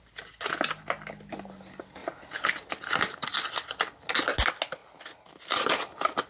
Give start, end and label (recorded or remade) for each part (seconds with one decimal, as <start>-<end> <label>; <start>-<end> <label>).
0.0-6.3 recorded